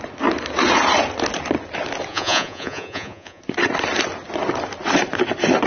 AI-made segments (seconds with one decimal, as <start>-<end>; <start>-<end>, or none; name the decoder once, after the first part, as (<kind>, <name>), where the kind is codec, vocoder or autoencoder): 2.1-3.4 (vocoder, Vocos)